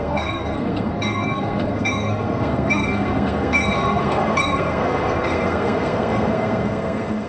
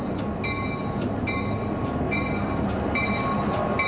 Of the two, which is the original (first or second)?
second